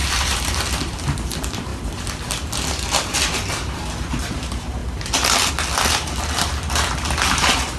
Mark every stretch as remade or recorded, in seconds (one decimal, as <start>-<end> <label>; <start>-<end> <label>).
0.0-0.6 remade; 0.6-7.8 recorded